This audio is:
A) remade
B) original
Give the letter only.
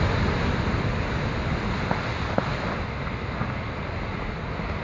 B